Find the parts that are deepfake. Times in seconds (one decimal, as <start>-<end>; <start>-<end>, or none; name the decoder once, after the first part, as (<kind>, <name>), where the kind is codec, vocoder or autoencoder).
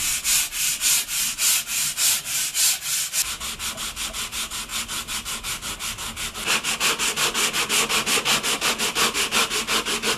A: none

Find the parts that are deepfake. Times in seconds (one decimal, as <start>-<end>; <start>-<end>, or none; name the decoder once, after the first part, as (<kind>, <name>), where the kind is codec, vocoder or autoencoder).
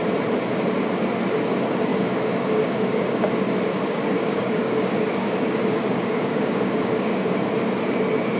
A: 1.9-3.3 (codec, DAC); 3.7-7.5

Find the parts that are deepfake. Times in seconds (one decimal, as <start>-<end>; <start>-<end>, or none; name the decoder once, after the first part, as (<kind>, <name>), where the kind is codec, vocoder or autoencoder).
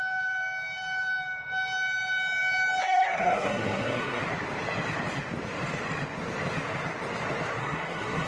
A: 2.8-4.2 (codec, SNAC); 7.6-8.3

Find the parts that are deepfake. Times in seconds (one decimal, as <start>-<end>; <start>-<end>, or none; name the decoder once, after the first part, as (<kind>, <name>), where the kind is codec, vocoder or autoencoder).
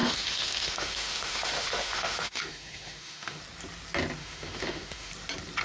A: 0.0-3.4 (autoencoder, DAC-VAE); 4.2-5.1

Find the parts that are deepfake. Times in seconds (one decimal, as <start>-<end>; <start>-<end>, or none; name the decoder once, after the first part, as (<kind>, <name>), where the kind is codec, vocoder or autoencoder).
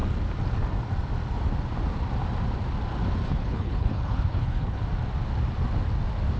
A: 3.3-4.8 (codec, HILCodec)